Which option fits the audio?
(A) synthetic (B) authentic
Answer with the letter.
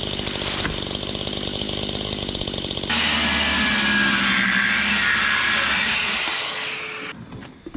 B